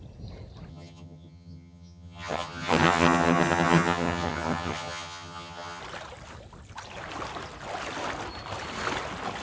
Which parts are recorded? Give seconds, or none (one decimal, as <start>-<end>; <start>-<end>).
0.0-0.7; 5.8-9.4